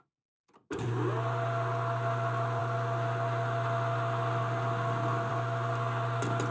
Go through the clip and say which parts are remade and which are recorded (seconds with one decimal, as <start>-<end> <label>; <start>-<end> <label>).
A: 0.0-6.5 recorded